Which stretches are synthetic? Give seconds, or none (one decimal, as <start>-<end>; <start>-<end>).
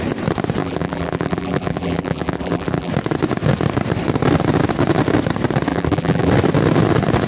0.6-2.9; 5.7-6.3